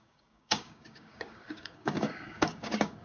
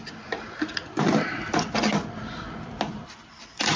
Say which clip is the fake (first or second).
first